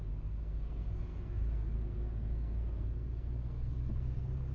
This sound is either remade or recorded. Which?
remade